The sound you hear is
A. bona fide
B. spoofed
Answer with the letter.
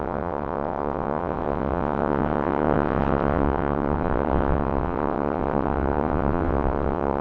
B